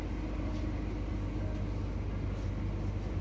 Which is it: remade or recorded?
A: recorded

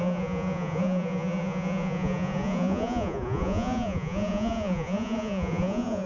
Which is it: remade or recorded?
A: remade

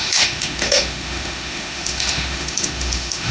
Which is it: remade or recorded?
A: remade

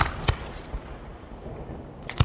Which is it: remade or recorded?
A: recorded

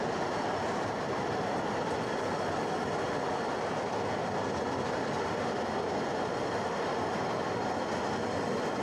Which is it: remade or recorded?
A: recorded